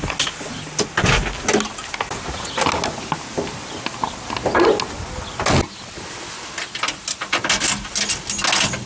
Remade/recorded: recorded